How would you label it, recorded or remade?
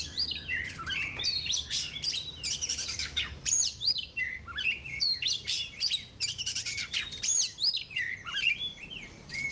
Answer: remade